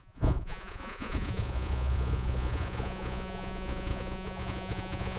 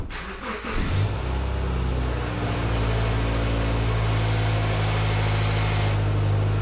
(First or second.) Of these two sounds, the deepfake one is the first